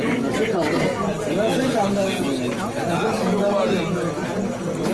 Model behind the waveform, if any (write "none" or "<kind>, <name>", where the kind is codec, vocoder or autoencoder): none